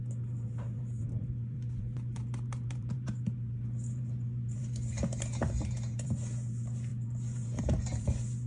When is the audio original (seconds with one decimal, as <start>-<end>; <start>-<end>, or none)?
none